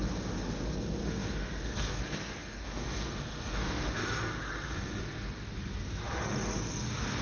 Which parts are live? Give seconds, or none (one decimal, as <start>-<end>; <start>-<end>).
0.0-1.0; 5.0-7.2